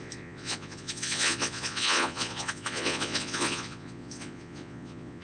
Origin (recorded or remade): remade